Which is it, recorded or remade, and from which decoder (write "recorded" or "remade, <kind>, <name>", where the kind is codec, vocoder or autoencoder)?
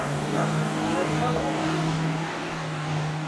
remade, codec, DAC